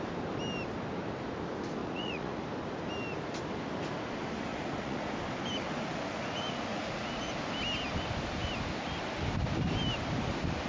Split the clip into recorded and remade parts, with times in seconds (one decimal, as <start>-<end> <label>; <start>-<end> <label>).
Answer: 0.0-1.8 recorded; 1.8-2.4 remade; 2.4-4.5 recorded; 4.5-5.1 remade; 5.1-6.7 recorded; 6.7-7.3 remade; 7.3-10.7 recorded